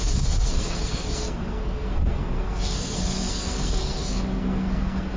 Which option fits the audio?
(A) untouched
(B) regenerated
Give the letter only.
B